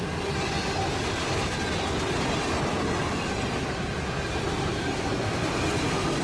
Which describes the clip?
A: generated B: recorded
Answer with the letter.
B